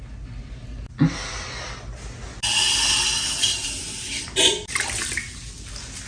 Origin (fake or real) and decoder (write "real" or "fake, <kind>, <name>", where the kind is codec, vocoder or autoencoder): real